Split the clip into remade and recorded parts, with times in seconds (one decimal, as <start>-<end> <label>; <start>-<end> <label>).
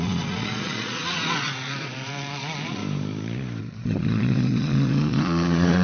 0.0-2.8 remade; 2.8-3.6 recorded; 3.6-5.8 remade